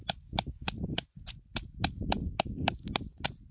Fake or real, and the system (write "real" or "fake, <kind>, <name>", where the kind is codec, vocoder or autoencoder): real